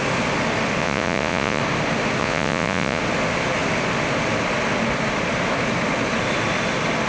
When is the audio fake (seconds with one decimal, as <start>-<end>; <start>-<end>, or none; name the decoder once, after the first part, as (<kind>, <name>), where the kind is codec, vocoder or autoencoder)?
0.8-1.6 (vocoder, Vocos); 2.2-3.0